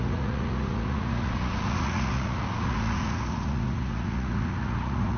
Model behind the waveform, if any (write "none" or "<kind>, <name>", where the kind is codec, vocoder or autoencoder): vocoder, Vocos